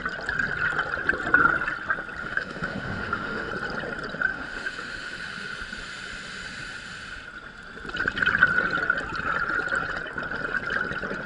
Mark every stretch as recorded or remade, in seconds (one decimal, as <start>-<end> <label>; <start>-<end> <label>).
0.0-2.2 recorded; 2.2-3.5 remade; 3.5-4.3 recorded; 4.3-5.2 remade; 5.2-11.3 recorded